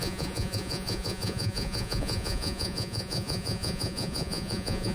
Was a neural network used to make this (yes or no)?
yes